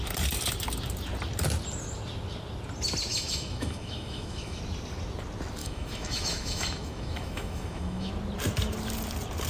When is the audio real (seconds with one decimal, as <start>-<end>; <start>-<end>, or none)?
0.0-3.1; 4.6-5.6; 8.1-9.5